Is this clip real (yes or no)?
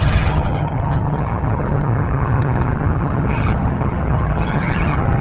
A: no